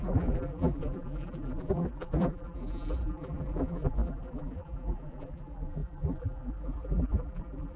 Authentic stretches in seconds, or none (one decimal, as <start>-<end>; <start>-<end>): none